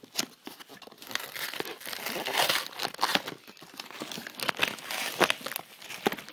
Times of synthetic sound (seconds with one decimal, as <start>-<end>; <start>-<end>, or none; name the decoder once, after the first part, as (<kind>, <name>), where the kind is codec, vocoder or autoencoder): none